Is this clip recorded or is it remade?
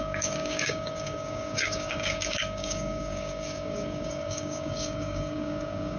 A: remade